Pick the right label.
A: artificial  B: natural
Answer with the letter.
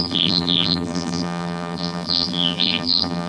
A